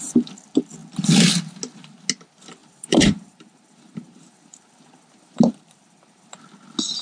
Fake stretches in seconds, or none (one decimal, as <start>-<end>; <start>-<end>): 2.6-6.4